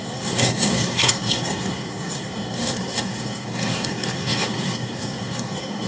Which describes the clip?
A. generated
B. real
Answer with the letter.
A